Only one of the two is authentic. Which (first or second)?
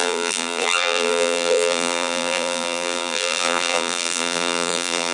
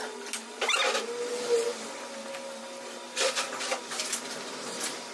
second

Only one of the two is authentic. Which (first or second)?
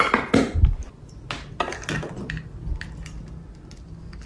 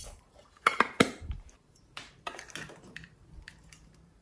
first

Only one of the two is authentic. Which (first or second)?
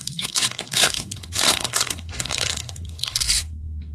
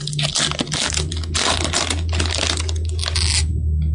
second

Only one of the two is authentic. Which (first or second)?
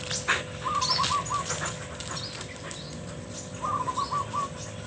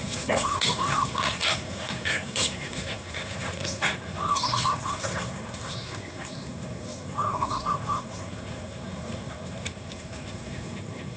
first